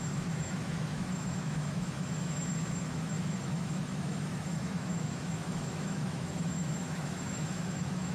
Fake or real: fake